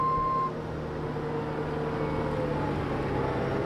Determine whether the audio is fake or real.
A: real